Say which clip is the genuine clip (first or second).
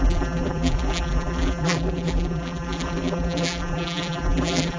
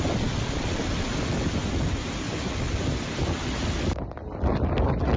second